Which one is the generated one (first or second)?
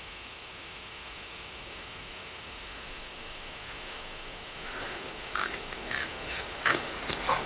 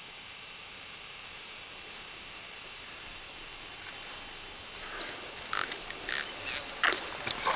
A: first